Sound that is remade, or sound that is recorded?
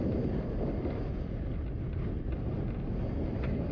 recorded